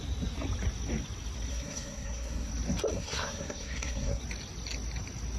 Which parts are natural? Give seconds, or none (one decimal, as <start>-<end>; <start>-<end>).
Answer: 0.0-1.5; 2.5-2.9; 4.2-5.4